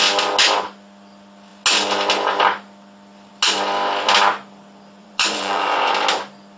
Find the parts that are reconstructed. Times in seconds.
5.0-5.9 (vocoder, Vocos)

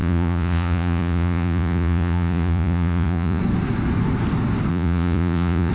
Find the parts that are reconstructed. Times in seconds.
0.0-3.4 (vocoder, Vocos); 4.7-5.7

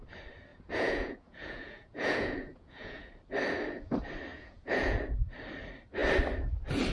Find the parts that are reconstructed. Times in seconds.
0.5-3.1 (vocoder, Vocos); 4.3-5.0

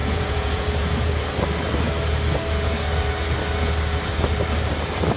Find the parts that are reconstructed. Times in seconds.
0.0-1.1 (vocoder, Vocos)

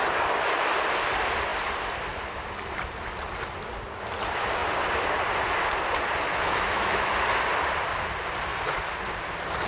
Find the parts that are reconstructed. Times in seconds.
6.3-7.1 (autoencoder, DAC-VAE)

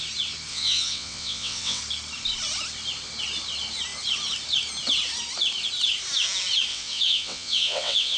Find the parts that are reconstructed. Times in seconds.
0.5-1.8 (vocoder, WaveNeXt); 6.7-8.2